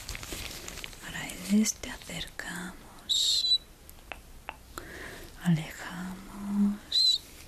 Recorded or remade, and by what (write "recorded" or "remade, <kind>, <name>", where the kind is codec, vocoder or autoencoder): recorded